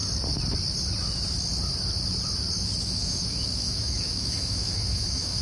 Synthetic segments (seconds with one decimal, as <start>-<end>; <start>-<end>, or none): 2.8-5.4